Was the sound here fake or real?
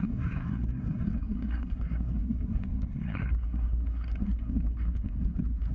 fake